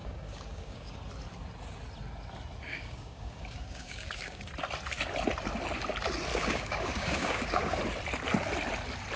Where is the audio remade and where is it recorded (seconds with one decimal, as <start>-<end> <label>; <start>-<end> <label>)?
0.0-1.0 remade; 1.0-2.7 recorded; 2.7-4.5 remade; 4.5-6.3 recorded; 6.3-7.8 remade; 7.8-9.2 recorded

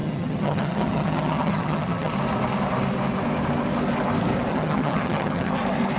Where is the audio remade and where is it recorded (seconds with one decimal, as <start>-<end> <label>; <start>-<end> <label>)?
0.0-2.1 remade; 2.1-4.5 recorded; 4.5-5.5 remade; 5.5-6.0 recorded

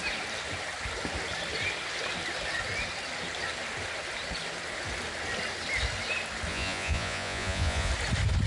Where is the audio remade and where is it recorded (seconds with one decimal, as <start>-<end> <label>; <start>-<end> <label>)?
0.0-6.5 recorded; 6.5-7.9 remade; 7.9-8.5 recorded

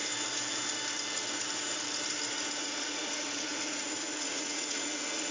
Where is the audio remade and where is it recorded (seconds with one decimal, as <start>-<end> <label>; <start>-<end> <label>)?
0.0-2.6 recorded; 2.6-5.3 remade